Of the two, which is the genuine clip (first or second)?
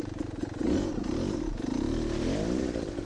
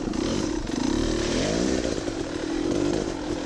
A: first